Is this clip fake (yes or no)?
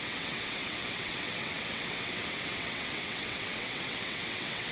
yes